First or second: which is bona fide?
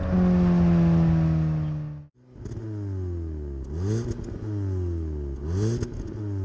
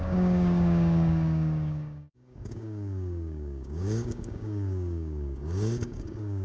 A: first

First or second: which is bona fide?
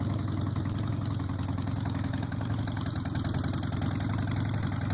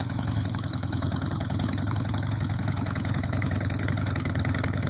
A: first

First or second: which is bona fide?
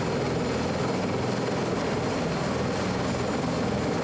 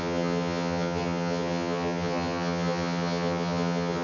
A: first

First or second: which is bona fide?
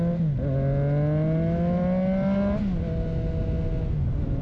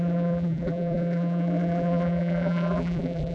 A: first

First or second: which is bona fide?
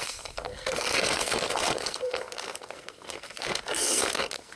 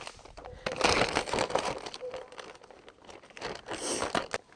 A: second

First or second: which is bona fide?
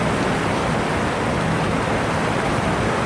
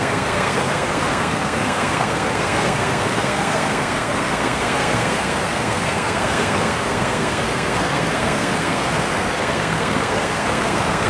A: first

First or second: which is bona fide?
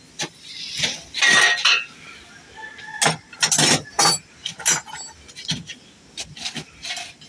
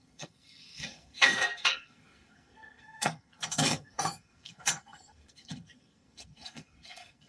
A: first